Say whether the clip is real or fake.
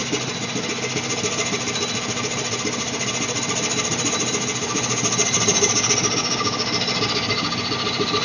real